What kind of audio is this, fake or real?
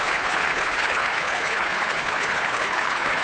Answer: fake